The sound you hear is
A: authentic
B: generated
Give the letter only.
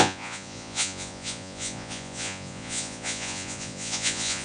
B